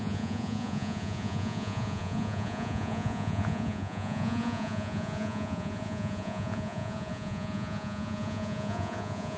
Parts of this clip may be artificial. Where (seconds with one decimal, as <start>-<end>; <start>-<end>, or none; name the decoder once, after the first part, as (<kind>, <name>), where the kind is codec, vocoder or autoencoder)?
0.0-9.4 (vocoder, Vocos)